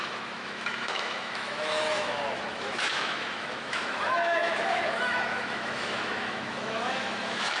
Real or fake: fake